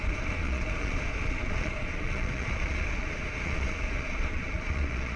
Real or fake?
fake